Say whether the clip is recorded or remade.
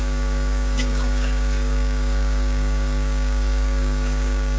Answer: remade